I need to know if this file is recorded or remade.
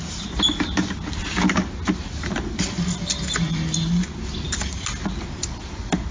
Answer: recorded